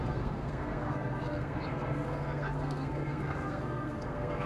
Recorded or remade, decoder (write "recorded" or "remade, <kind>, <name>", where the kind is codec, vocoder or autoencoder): remade, codec, SNAC